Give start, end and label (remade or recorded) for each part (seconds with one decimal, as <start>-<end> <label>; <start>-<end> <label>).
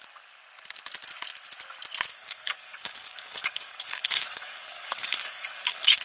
0.0-2.1 recorded; 2.1-6.0 remade